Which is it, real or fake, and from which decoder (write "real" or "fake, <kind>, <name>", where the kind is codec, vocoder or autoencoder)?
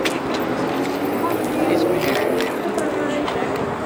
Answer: real